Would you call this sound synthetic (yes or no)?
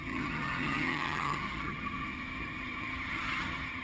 yes